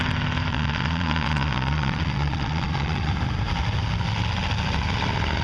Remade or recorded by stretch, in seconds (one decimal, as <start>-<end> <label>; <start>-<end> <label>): 0.0-0.5 recorded; 0.5-3.1 remade; 3.1-5.4 recorded